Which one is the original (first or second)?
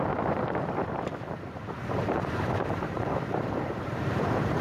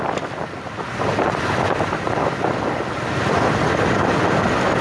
second